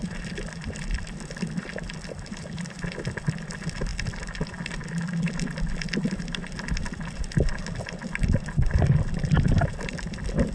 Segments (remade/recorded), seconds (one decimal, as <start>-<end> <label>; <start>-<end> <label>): 0.0-10.5 remade